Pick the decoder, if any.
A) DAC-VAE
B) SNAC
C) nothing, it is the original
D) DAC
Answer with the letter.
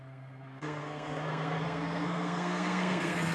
B